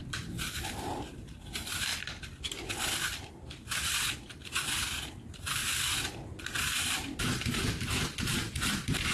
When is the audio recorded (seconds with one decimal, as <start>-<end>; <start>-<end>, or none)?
1.9-5.1; 5.6-6.3